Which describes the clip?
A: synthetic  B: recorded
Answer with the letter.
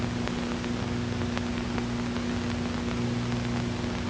B